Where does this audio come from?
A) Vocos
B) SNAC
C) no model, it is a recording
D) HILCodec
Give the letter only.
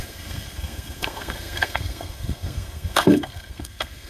B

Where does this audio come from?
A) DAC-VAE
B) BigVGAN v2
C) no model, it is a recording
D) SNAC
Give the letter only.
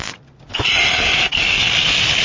C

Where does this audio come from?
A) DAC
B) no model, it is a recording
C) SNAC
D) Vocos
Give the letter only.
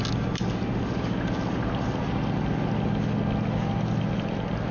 B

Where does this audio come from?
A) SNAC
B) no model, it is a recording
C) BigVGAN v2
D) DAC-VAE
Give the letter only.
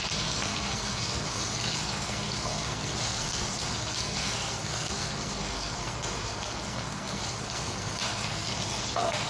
A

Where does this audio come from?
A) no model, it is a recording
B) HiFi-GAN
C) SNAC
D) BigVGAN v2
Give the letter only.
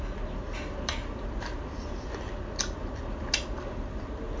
A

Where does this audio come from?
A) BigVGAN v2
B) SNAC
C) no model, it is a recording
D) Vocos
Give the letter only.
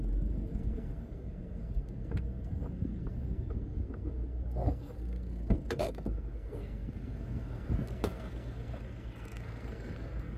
B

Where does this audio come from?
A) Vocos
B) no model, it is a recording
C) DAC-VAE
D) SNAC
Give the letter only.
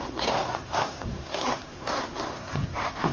D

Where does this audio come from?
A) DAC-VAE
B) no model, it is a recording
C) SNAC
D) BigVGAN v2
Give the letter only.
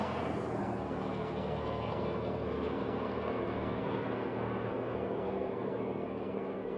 C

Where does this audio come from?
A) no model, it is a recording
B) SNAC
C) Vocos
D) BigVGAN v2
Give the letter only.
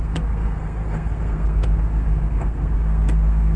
B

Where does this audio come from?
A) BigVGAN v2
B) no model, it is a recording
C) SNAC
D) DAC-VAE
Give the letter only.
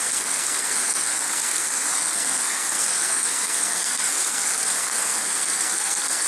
C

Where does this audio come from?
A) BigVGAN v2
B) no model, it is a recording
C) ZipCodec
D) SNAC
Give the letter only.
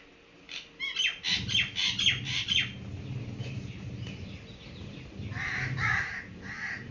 B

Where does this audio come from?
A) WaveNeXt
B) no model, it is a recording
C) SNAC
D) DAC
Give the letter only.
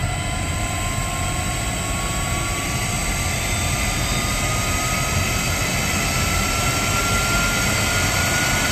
B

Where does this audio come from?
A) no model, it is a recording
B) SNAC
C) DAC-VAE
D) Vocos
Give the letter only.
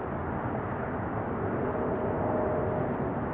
A